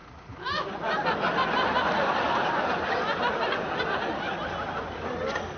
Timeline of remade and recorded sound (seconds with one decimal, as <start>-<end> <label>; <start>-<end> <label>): 0.0-5.6 recorded